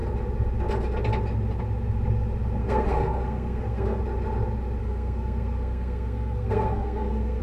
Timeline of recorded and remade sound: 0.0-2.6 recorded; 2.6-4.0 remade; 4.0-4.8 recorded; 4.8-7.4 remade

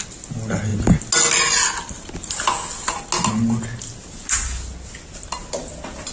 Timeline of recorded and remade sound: 0.0-6.1 recorded

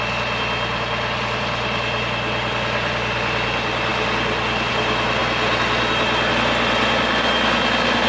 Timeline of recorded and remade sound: 0.0-8.1 recorded